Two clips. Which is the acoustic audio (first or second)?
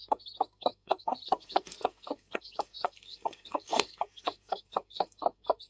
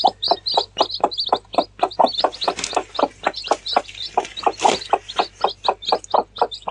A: second